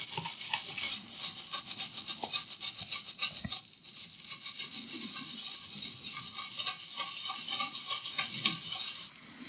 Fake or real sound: real